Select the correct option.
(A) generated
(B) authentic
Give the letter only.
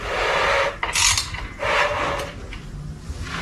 B